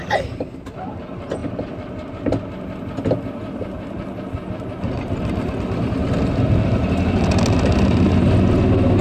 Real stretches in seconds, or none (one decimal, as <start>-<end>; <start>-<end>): 0.0-1.4; 2.1-9.0